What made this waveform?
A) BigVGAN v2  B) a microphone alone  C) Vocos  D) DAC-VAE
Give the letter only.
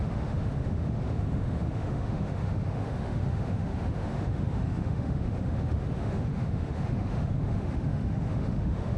D